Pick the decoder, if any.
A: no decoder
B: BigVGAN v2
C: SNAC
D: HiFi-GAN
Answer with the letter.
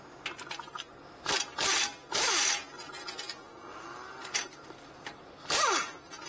A